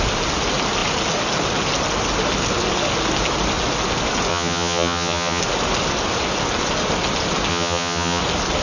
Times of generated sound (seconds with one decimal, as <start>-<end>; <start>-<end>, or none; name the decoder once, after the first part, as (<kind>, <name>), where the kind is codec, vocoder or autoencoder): 4.3-5.4 (vocoder, HiFi-GAN); 7.5-8.2